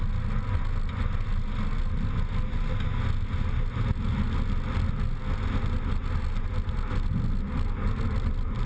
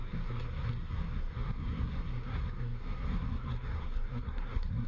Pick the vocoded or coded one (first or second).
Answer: second